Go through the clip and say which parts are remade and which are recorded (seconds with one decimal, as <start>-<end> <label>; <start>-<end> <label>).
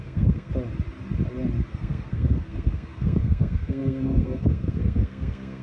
0.0-0.5 remade; 0.5-1.7 recorded; 1.7-5.6 remade